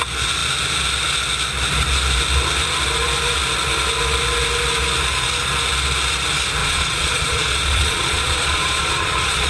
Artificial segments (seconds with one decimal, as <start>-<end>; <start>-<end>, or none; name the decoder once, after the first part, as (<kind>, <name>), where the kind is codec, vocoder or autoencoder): 6.6-9.5 (vocoder, Vocos)